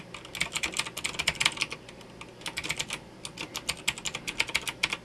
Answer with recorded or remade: recorded